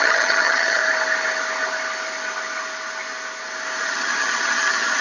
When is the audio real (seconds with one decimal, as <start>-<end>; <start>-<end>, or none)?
0.8-3.8